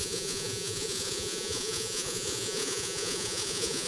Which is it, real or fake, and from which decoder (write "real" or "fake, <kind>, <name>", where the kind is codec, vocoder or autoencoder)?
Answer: fake, vocoder, Vocos